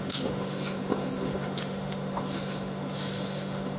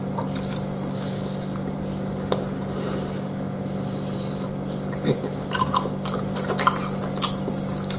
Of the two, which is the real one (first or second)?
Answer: second